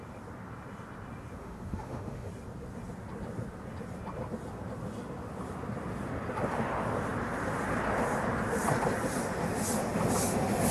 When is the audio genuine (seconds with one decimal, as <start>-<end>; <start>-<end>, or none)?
0.0-1.4; 2.3-10.7

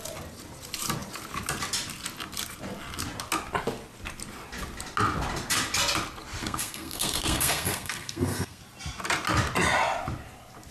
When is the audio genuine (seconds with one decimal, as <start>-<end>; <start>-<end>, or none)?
0.0-6.4; 8.6-10.7

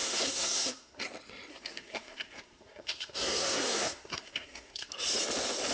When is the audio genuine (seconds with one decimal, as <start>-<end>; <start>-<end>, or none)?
1.0-1.5; 4.9-5.7

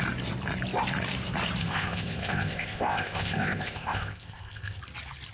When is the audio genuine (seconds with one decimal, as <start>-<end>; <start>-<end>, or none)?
0.0-1.6; 4.8-5.3

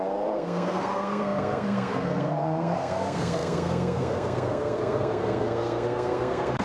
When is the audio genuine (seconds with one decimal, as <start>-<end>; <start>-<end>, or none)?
none

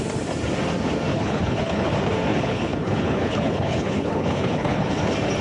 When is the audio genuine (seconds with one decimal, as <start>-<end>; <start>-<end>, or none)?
0.0-1.1; 1.9-2.3; 4.9-5.4

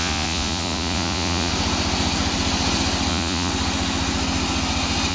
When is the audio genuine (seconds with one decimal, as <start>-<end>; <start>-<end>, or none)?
1.5-3.1; 3.5-5.1